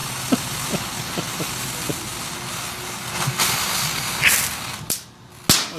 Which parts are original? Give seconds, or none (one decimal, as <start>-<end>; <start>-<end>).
0.0-5.8